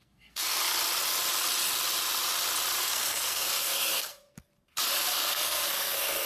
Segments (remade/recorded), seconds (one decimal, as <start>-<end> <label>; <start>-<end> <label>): 0.0-0.6 remade; 0.6-2.8 recorded; 2.8-4.5 remade; 4.5-5.0 recorded; 5.0-6.3 remade